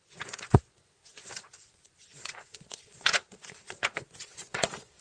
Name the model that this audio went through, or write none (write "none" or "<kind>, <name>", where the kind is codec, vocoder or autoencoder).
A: vocoder, Vocos